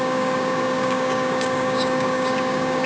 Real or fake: fake